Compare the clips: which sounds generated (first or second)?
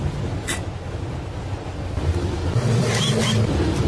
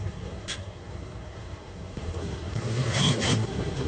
second